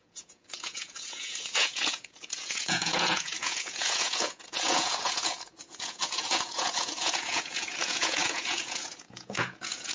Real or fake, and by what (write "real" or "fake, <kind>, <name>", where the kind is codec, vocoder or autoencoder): fake, vocoder, Vocos